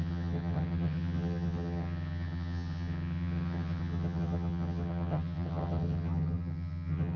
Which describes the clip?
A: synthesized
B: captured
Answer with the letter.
A